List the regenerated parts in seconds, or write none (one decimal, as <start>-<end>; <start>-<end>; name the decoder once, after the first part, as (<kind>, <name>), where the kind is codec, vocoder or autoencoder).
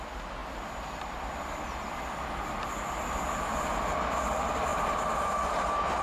4.7-6.0 (vocoder, BigVGAN v2)